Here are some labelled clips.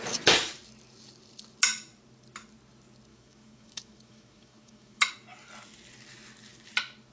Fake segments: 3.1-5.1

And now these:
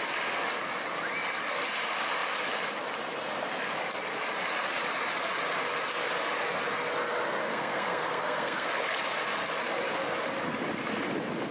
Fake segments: 7.5-8.7

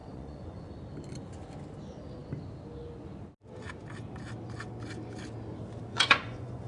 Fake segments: 0.0-0.7; 5.9-6.7

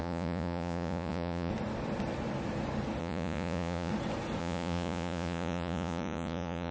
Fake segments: 0.0-1.5; 3.0-3.9; 4.4-6.7

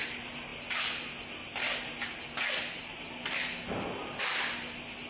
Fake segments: none